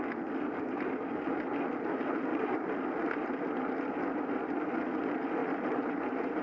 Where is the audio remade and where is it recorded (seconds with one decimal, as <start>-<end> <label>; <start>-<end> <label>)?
0.0-2.3 recorded; 2.3-2.8 remade; 2.8-5.4 recorded; 5.4-6.0 remade; 6.0-6.4 recorded